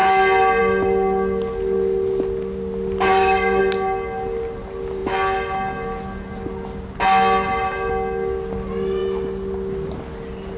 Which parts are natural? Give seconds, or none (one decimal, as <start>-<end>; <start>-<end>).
0.0-3.1; 3.6-10.6